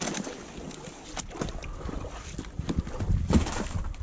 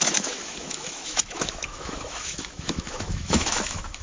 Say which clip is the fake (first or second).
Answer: second